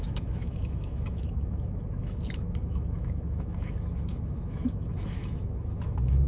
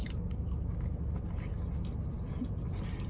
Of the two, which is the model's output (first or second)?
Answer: first